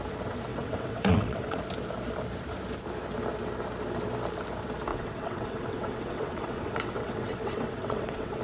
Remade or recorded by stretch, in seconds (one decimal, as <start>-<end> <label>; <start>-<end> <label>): 0.0-0.5 recorded; 0.5-1.6 remade; 1.6-4.9 recorded; 4.9-8.4 remade